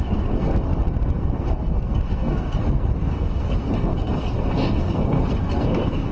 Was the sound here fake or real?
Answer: fake